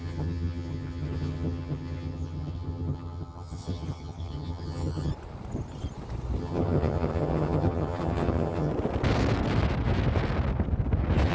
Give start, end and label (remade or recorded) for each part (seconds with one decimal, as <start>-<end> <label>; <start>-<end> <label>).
0.0-5.1 remade; 5.1-6.4 recorded; 6.4-8.7 remade; 8.7-11.3 recorded